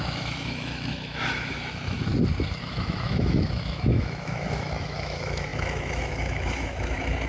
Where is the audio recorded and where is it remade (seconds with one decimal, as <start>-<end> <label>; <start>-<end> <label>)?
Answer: 0.0-2.1 remade; 2.1-2.6 recorded; 2.6-7.3 remade